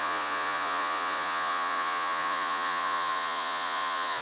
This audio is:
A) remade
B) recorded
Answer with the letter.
A